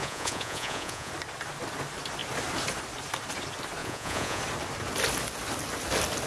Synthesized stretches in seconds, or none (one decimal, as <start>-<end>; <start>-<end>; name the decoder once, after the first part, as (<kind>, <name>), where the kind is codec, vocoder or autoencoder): 0.0-1.1 (vocoder, Vocos); 3.8-4.4